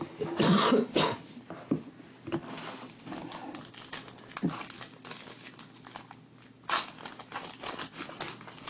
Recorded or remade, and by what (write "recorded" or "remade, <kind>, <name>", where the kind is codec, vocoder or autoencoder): recorded